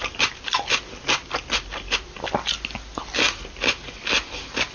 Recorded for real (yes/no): yes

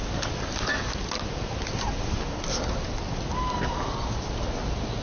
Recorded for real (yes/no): yes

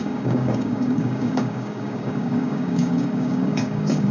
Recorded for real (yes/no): no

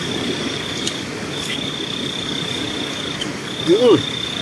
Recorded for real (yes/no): no